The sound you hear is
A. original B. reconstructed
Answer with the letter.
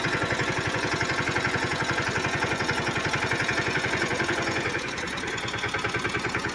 B